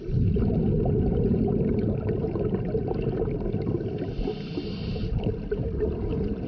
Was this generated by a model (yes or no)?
no